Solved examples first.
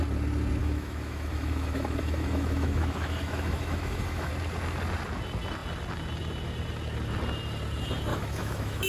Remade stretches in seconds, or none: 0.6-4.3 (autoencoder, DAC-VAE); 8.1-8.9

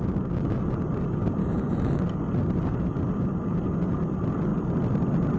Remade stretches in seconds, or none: 1.4-2.0 (autoencoder, DAC-VAE)

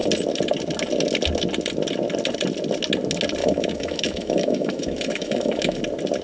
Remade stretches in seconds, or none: 3.4-5.8 (autoencoder, DAC-VAE)

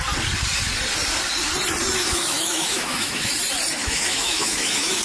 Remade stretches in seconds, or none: 2.0-3.3 (autoencoder, DAC-VAE); 3.8-5.0